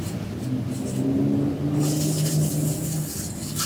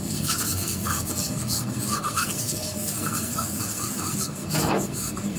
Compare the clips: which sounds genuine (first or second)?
first